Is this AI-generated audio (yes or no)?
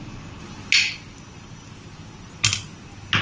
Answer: no